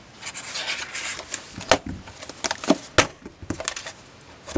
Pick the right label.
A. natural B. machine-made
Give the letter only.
A